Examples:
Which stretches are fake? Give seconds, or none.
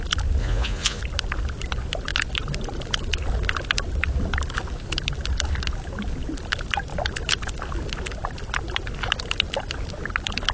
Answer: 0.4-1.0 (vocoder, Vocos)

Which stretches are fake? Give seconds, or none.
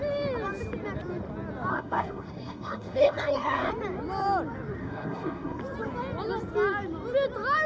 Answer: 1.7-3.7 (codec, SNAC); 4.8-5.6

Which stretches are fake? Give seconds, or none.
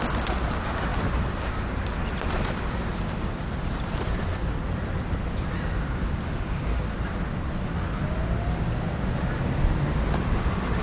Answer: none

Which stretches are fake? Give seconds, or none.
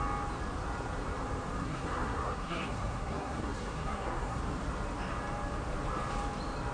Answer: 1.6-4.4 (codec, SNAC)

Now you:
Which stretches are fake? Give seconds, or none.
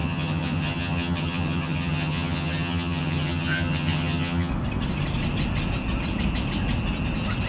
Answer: 0.0-4.5 (vocoder, HiFi-GAN)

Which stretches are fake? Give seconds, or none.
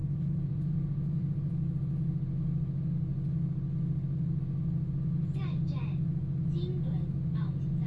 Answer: 0.0-1.5 (vocoder, Vocos)